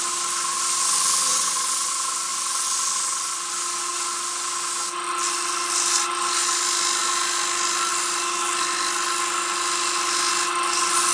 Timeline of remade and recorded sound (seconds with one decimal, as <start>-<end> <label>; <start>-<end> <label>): 0.0-1.3 recorded; 1.3-1.9 remade; 1.9-11.1 recorded